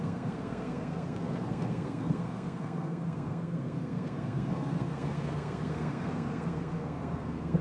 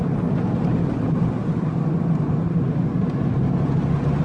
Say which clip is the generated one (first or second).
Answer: first